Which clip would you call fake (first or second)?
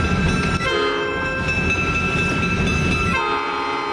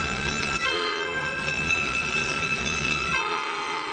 second